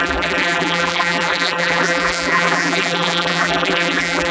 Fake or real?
fake